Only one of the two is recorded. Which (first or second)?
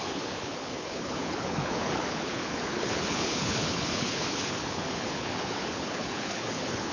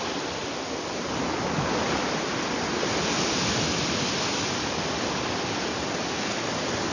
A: second